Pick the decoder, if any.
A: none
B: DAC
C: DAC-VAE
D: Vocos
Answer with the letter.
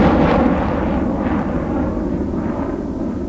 A